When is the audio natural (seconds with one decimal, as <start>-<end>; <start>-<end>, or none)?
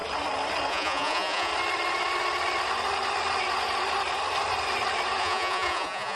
0.0-0.7; 1.5-5.2